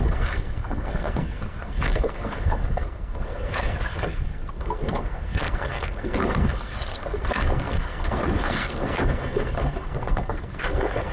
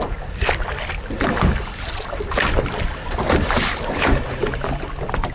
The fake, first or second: first